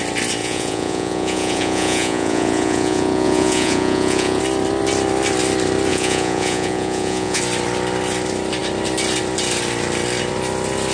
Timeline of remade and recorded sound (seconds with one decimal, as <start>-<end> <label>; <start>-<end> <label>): 0.0-0.4 recorded; 0.4-4.4 remade; 4.4-5.9 recorded; 5.9-7.4 remade; 7.4-10.9 recorded